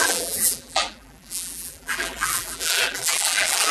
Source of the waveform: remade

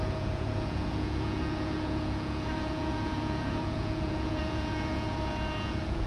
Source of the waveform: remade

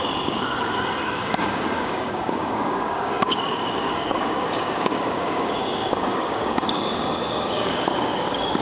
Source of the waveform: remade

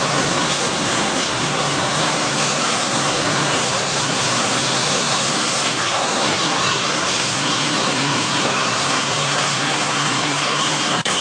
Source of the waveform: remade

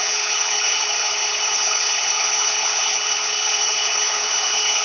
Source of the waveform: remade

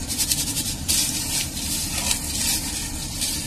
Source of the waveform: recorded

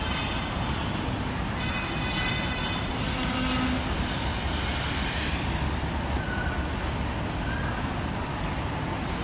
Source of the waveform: recorded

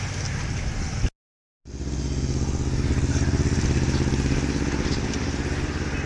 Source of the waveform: recorded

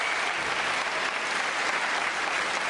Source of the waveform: recorded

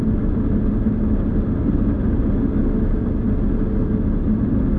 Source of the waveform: recorded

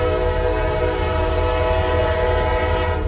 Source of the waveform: recorded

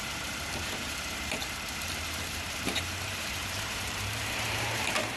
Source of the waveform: remade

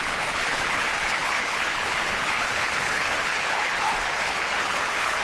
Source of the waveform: remade